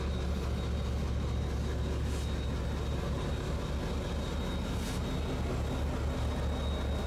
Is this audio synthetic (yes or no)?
no